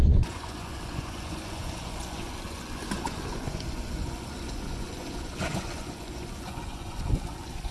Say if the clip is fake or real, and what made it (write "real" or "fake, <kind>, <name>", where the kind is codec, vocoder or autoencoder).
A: fake, vocoder, Vocos